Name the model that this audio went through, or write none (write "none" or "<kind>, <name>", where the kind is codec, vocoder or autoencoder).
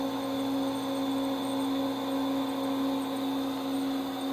none